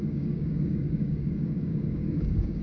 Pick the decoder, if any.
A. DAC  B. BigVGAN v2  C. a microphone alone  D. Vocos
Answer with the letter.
A